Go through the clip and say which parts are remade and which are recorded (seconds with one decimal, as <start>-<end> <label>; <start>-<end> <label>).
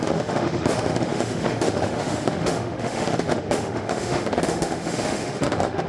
0.0-5.9 remade